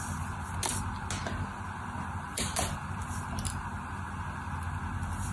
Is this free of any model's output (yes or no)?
yes